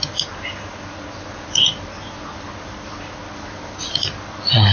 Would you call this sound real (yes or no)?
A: yes